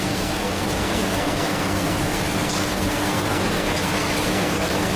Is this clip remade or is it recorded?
remade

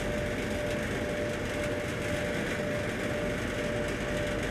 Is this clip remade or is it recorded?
recorded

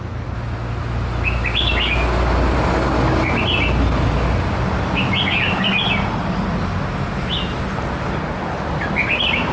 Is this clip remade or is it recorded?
recorded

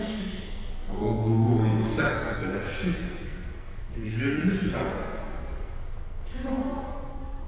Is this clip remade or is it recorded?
remade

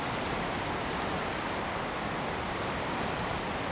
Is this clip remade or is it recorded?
recorded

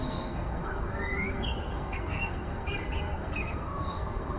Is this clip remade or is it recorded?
remade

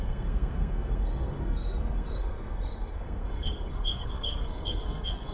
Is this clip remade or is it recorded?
remade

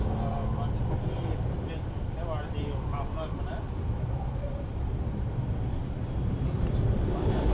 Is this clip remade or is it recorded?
recorded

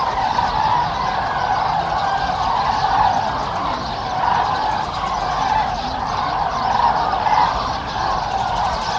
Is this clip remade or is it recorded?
recorded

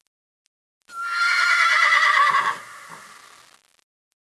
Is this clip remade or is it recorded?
recorded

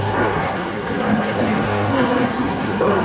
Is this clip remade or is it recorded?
remade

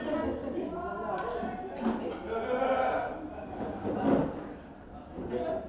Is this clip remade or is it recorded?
recorded